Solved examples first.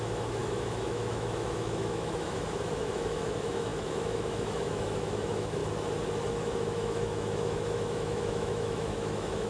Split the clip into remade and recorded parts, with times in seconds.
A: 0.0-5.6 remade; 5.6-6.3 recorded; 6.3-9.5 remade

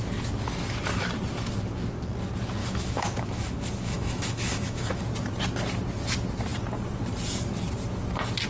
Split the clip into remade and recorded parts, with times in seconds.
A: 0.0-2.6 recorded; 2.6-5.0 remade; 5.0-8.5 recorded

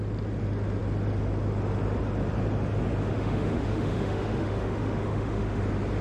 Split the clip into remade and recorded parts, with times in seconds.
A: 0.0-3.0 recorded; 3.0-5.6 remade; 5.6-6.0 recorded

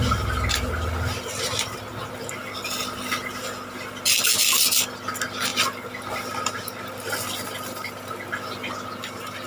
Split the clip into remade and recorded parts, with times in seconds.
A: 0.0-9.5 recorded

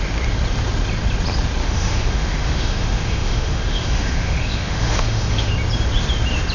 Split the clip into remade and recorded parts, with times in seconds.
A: 0.0-1.6 recorded; 1.6-5.5 remade; 5.5-6.5 recorded

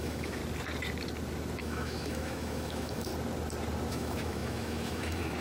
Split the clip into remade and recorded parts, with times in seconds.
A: 0.0-0.4 remade; 0.4-1.6 recorded; 1.6-3.1 remade; 3.1-3.9 recorded; 3.9-5.4 remade